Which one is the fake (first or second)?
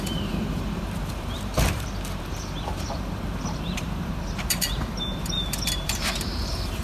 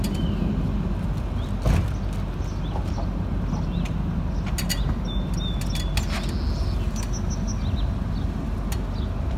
first